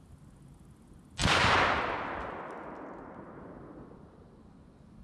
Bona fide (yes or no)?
yes